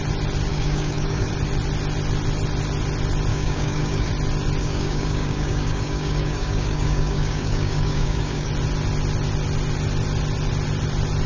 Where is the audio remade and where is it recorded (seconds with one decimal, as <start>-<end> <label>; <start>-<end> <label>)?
0.0-0.5 recorded; 0.5-1.3 remade; 1.3-3.3 recorded; 3.3-4.1 remade; 4.1-4.6 recorded; 4.6-8.5 remade; 8.5-11.3 recorded